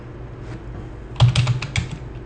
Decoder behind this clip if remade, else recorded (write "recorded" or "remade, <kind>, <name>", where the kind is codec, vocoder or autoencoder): recorded